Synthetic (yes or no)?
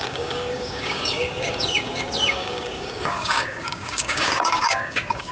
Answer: yes